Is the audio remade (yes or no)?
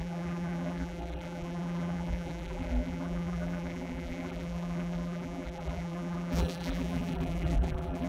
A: yes